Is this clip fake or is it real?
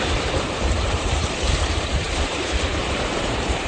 fake